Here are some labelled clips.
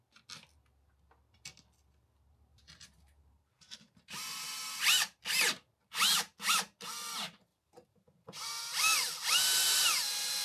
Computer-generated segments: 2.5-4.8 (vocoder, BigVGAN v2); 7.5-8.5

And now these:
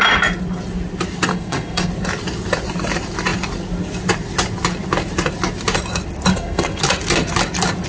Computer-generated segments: 1.3-1.9 (codec, SNAC); 6.3-6.8

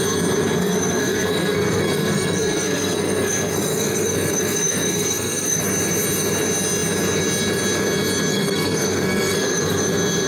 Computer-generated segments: 0.6-5.6 (codec, SNAC); 8.3-9.8

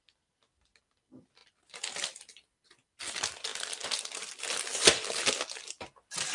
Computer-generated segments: none

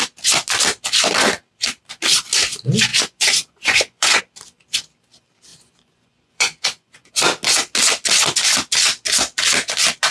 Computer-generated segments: 2.9-4.2 (vocoder, Vocos); 5.5-7.1

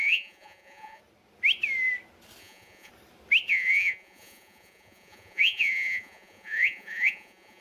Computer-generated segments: 0.0-1.0 (vocoder, Vocos); 2.4-2.9; 3.5-7.6